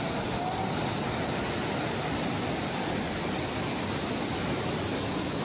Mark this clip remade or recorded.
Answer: recorded